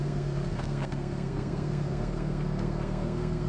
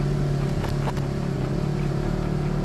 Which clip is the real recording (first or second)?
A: second